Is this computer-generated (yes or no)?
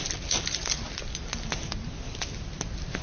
no